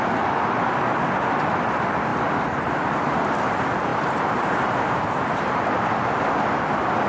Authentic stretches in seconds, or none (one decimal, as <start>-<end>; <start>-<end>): 0.0-2.1; 3.1-3.9; 5.0-7.1